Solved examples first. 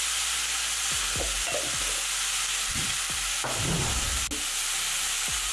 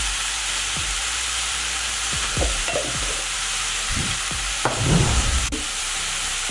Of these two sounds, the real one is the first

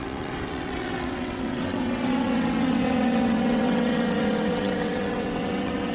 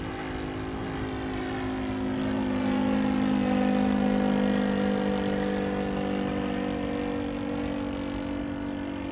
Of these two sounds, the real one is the second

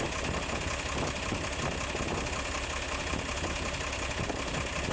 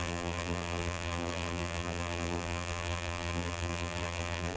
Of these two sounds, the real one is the first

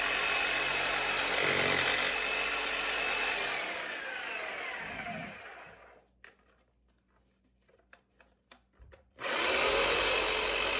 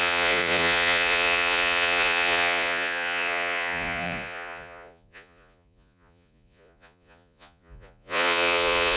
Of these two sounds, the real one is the first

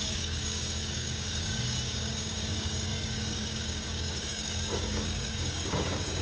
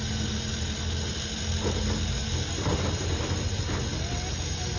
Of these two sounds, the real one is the second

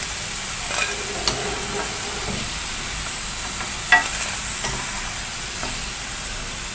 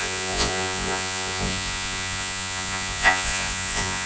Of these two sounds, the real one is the first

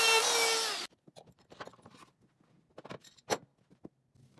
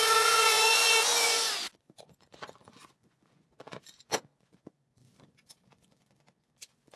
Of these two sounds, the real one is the first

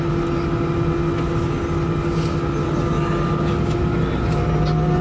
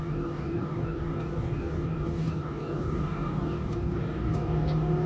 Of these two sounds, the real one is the first